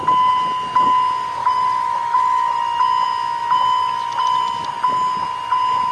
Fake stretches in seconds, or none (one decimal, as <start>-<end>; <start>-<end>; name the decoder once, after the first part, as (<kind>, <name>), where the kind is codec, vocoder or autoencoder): 1.4-2.8 (autoencoder, DAC-VAE)